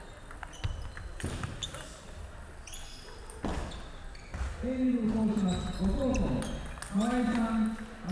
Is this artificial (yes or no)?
no